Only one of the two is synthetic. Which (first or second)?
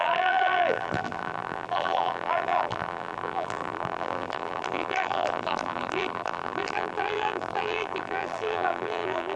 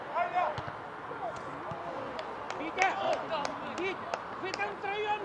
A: first